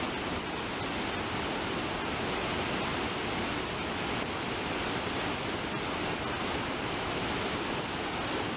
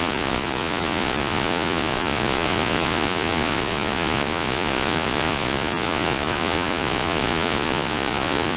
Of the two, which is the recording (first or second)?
first